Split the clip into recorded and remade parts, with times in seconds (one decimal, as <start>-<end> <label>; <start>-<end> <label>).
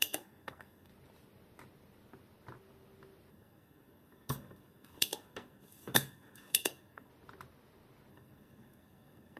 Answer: 0.0-0.9 remade; 0.9-3.3 recorded; 3.3-7.1 remade; 7.1-8.1 recorded; 8.1-9.4 remade